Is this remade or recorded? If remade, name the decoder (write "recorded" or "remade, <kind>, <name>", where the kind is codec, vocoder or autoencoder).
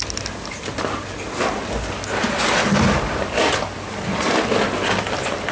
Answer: recorded